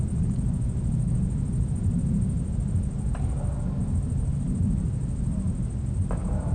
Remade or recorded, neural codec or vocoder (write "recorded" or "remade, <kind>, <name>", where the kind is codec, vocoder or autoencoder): recorded